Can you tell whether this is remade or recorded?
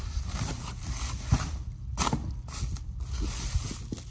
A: recorded